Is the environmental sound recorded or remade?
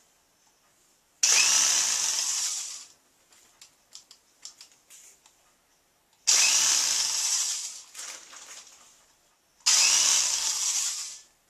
recorded